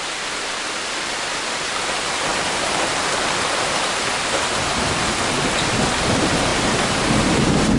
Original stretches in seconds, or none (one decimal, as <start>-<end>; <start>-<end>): 0.0-2.3; 2.9-7.8